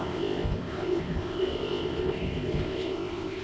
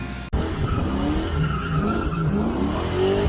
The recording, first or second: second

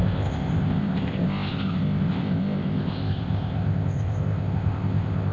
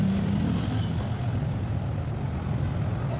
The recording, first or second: second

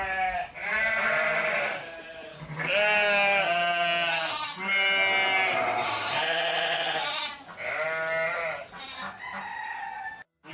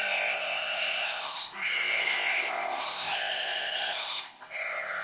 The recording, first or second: first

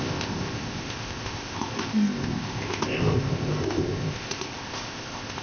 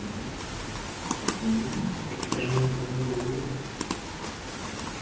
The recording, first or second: second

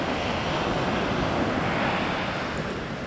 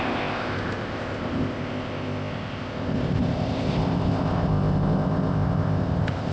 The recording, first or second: first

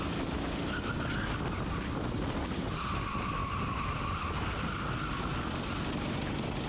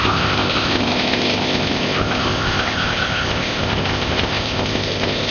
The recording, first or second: first